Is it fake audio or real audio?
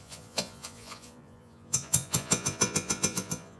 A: fake